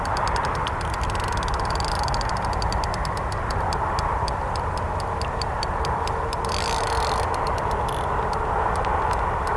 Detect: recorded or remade recorded